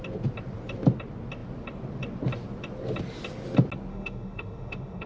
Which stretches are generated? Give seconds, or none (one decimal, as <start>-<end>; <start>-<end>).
3.9-5.1